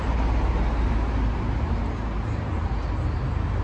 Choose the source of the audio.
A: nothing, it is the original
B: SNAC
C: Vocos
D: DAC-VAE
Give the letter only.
A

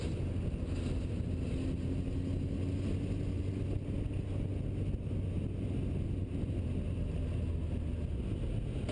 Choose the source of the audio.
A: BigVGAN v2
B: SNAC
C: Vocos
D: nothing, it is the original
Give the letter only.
D